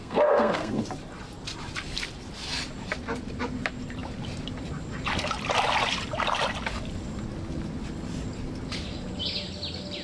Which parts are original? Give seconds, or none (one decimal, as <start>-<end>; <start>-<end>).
0.8-10.0